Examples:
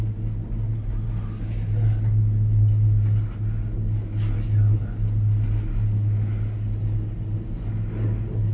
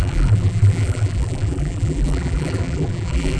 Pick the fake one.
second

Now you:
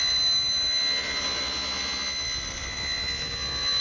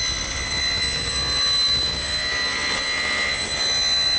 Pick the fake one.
second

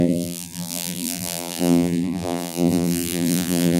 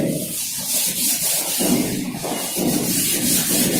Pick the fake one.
first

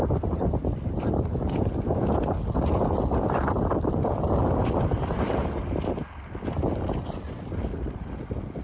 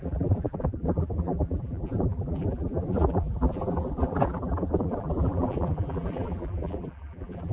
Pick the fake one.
second